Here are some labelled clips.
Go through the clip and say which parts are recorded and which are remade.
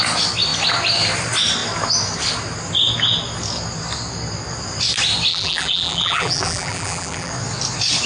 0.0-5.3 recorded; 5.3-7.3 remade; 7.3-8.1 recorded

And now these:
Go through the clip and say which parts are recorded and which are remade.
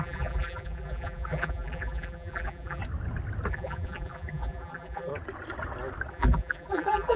0.0-2.8 remade; 2.8-3.5 recorded; 3.5-5.1 remade; 5.1-6.1 recorded; 6.1-7.2 remade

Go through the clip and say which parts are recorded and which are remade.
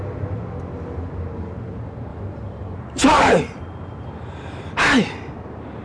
0.0-2.1 recorded; 2.1-4.7 remade; 4.7-5.8 recorded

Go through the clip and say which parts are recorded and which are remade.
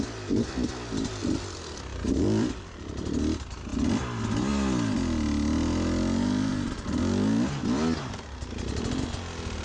0.0-1.9 recorded; 1.9-2.9 remade; 2.9-9.6 recorded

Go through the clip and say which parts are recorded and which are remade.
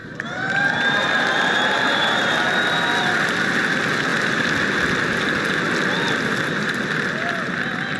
0.0-2.9 remade; 2.9-8.0 recorded